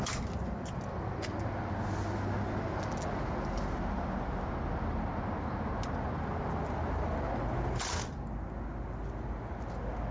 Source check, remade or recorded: recorded